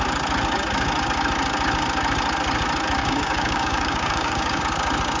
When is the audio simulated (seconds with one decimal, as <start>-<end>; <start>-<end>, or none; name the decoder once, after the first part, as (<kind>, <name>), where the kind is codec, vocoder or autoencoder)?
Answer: 3.0-4.6 (codec, DAC)

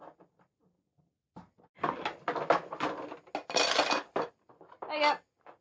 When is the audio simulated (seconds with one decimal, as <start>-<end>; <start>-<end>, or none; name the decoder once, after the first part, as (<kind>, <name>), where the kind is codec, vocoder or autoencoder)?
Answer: none

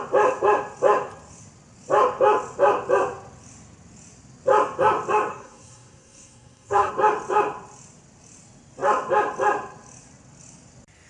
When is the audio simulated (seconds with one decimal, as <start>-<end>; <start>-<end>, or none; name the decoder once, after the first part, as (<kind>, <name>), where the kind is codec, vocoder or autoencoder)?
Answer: 5.3-6.9 (codec, SNAC)

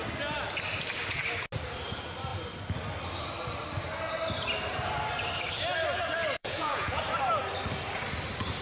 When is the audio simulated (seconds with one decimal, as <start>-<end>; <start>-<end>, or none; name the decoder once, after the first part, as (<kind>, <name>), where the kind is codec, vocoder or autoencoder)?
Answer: 6.4-7.0 (vocoder, Vocos)

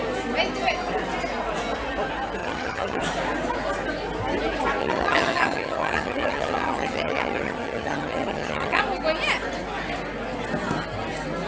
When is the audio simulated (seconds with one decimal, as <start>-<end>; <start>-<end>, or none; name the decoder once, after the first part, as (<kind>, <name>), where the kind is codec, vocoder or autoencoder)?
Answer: 2.4-3.0 (vocoder, HiFi-GAN); 4.8-8.8